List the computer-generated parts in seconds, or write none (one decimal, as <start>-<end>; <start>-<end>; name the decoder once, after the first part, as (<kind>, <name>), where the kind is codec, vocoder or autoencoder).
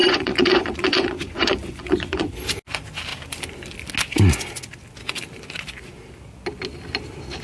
0.0-2.3 (vocoder, Vocos)